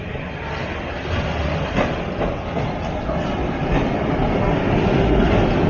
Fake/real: real